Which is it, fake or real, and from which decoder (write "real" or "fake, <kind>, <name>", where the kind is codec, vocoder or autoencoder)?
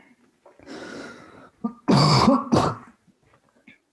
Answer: real